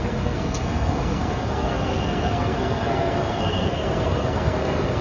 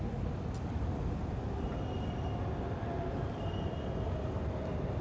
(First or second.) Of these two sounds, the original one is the second